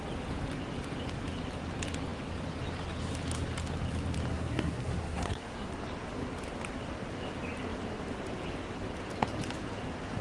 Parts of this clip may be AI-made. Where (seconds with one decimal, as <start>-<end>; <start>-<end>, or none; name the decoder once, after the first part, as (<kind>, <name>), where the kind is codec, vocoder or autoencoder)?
4.3-5.7 (codec, SNAC)